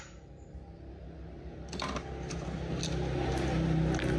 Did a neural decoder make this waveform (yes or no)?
no